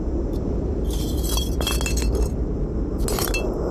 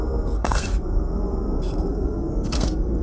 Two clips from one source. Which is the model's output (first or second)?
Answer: second